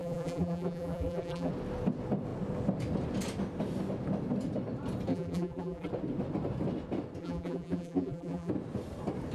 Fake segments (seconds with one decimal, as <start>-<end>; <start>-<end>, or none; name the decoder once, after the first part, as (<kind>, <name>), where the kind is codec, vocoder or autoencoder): 0.0-1.5 (vocoder, BigVGAN v2); 5.1-5.9; 7.2-8.5